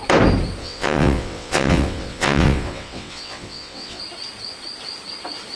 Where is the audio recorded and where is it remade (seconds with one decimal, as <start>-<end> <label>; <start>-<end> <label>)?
0.0-0.6 recorded; 0.6-4.0 remade; 4.0-5.6 recorded

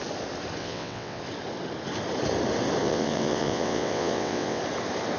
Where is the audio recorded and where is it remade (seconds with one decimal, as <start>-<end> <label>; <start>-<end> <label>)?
0.0-0.6 recorded; 0.6-1.2 remade; 1.2-2.8 recorded; 2.8-4.6 remade; 4.6-5.2 recorded